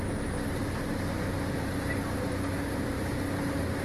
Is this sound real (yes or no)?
yes